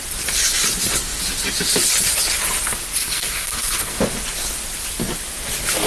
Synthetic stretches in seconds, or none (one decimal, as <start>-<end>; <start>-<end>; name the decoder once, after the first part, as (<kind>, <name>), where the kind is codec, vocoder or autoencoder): 3.0-4.0 (codec, SNAC)